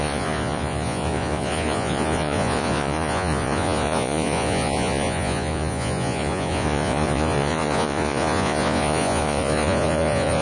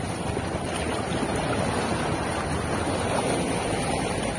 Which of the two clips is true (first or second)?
second